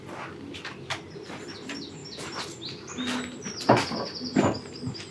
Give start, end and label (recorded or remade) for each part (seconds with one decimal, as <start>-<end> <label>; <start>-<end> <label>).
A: 0.0-5.1 recorded

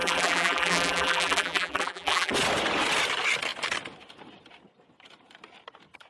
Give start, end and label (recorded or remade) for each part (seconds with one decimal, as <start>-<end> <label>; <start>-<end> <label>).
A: 0.0-2.3 remade; 2.3-6.1 recorded

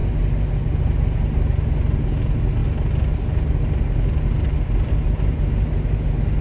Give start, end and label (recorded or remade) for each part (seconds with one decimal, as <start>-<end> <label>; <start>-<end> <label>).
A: 0.0-6.4 recorded

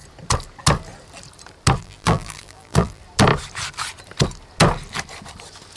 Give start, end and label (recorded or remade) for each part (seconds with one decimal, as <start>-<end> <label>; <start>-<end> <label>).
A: 0.0-1.8 recorded; 1.8-3.0 remade; 3.0-5.8 recorded

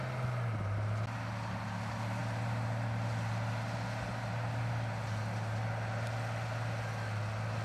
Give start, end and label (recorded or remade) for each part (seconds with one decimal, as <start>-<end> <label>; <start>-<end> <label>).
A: 0.0-7.6 recorded

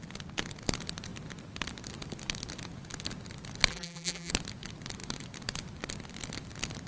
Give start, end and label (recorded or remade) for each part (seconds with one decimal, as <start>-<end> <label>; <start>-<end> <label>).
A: 0.0-3.7 recorded; 3.7-4.3 remade; 4.3-6.9 recorded